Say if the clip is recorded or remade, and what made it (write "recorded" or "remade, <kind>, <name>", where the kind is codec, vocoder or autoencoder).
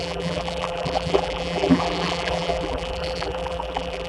remade, vocoder, BigVGAN v2